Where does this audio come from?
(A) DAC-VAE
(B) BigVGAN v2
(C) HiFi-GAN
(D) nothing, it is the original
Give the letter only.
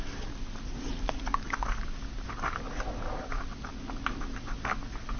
D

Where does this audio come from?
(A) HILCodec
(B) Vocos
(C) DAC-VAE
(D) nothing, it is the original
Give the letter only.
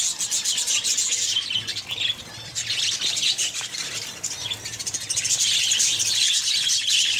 D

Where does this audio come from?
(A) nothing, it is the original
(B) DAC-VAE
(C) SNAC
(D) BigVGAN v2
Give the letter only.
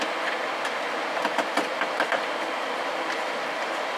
A